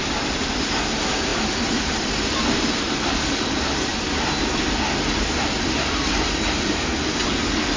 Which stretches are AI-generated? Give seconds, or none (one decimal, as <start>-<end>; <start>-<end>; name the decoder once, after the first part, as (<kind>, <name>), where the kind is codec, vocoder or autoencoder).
none